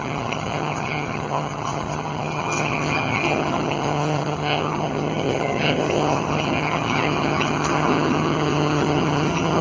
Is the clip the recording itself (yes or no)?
no